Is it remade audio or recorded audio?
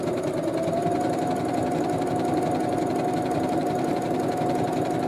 recorded